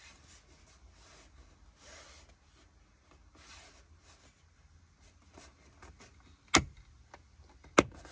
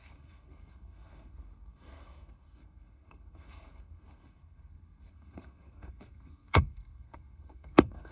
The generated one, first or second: second